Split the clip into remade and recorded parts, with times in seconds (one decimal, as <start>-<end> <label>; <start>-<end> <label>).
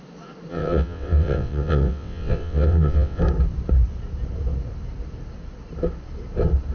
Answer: 0.0-0.5 recorded; 0.5-3.2 remade; 3.2-6.7 recorded